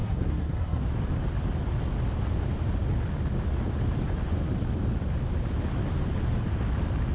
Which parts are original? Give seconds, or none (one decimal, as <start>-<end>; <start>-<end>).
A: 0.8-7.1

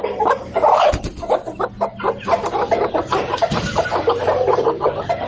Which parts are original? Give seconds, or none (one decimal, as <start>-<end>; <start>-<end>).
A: 1.1-3.5

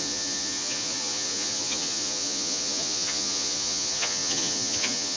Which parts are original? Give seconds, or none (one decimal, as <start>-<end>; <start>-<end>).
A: none

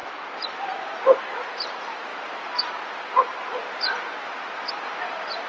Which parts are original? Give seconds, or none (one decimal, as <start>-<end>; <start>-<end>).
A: 0.0-1.2; 2.1-4.7